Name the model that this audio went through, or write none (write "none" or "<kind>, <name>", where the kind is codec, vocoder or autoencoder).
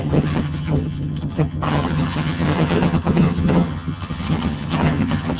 vocoder, HiFi-GAN